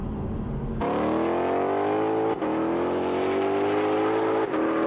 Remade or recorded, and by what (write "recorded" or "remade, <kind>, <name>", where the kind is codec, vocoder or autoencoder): recorded